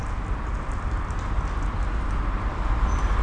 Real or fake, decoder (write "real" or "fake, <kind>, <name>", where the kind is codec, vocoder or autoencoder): real